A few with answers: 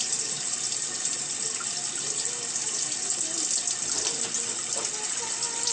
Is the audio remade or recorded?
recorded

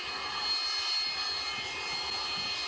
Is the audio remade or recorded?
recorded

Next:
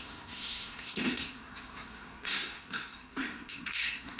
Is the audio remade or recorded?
remade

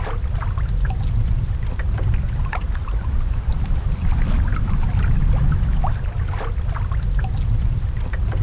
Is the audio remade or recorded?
recorded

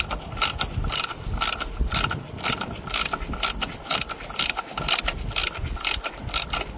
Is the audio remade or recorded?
recorded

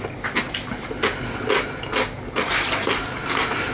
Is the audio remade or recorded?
recorded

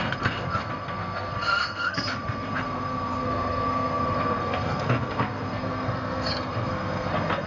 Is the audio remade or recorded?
remade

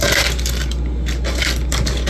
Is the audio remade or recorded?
recorded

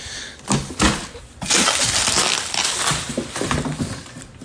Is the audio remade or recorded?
recorded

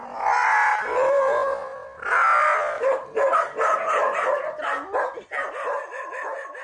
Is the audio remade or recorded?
recorded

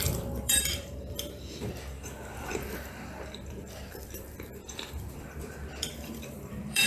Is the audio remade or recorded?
remade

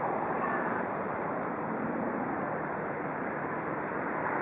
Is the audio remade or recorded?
remade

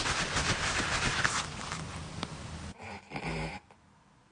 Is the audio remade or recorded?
recorded